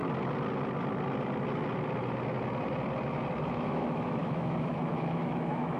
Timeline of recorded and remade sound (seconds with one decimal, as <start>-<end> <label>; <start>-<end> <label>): 0.0-3.5 recorded; 3.5-5.8 remade